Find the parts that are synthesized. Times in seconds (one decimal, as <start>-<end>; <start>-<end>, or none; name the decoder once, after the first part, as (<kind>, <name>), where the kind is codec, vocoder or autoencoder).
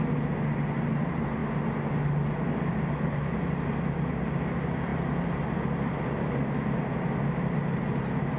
none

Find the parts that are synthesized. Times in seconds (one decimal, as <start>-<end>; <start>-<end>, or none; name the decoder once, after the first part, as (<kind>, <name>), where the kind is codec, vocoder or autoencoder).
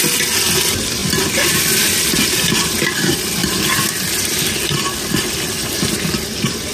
1.0-1.6 (vocoder, BigVGAN v2); 3.4-6.7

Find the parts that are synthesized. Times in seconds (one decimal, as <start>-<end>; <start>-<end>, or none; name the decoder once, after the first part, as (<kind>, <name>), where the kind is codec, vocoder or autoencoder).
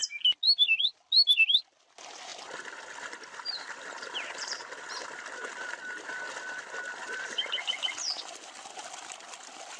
none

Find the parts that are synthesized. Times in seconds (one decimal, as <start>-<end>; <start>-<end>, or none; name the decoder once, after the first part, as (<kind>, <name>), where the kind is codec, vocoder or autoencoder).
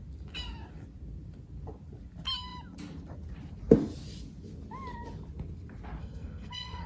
6.0-6.9 (codec, SNAC)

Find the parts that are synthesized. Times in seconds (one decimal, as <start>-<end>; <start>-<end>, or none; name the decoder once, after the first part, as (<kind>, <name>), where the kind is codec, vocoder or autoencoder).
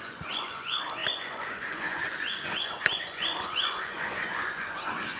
0.0-5.2 (vocoder, Vocos)